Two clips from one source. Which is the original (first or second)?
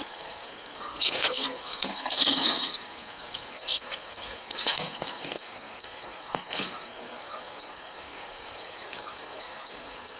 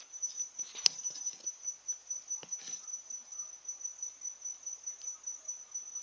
second